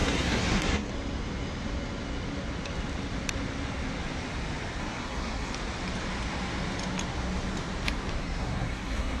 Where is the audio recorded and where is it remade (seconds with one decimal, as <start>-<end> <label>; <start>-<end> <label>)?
0.0-0.9 remade; 0.9-4.8 recorded; 4.8-5.5 remade; 5.5-8.2 recorded; 8.2-9.2 remade